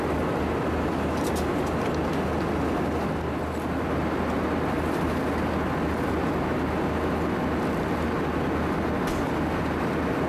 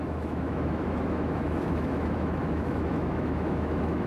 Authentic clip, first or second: first